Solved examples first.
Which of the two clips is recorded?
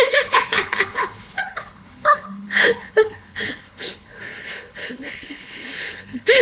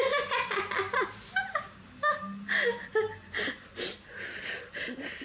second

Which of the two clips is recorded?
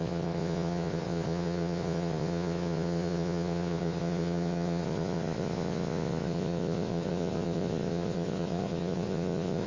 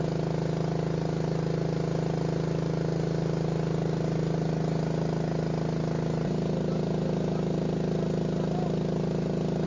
second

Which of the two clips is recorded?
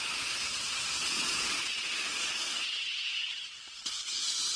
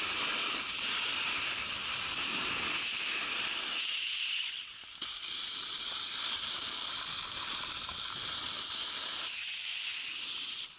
second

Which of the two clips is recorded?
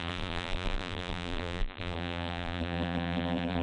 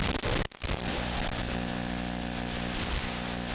second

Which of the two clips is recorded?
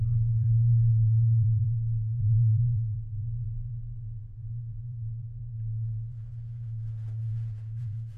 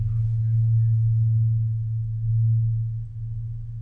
second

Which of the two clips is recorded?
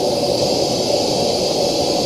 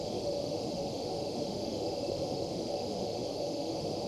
first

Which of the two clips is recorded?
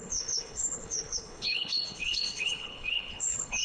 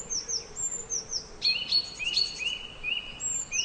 second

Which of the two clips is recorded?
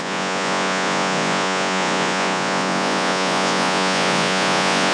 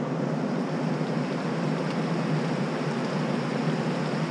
second